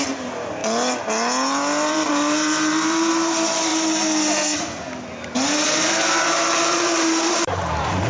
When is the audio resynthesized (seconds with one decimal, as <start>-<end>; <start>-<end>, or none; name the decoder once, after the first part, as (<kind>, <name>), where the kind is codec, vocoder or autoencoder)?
0.0-0.6 (vocoder, BigVGAN v2); 1.9-3.7; 6.2-8.1